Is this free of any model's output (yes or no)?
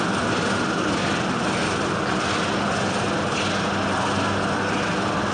yes